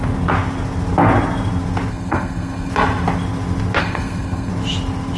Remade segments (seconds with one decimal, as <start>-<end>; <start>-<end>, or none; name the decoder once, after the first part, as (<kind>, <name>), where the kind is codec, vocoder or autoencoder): 1.9-2.7 (codec, SNAC); 3.8-4.5